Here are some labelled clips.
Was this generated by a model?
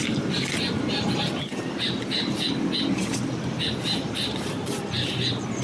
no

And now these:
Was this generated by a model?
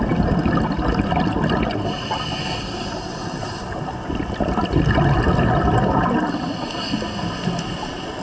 no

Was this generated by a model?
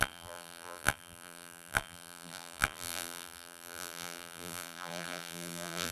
yes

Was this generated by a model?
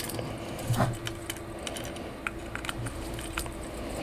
no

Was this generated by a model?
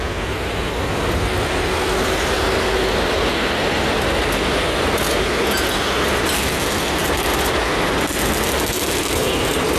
no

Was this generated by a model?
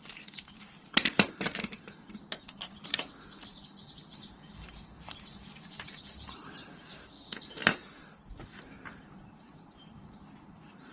yes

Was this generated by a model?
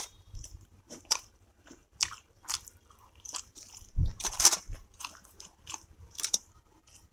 yes